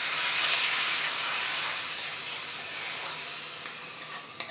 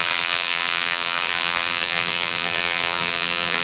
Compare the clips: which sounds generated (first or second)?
second